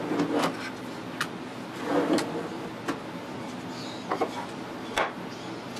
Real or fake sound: real